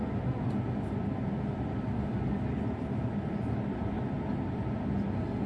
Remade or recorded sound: recorded